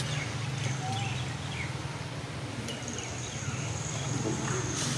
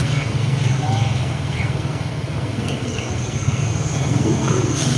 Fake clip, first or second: second